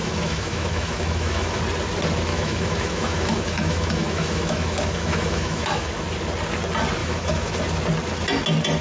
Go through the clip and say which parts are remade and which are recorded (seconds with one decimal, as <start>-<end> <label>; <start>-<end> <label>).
0.0-1.6 remade; 1.6-2.3 recorded; 2.3-5.9 remade; 5.9-7.0 recorded; 7.0-7.6 remade; 7.6-8.8 recorded